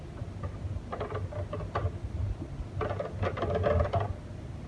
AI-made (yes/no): no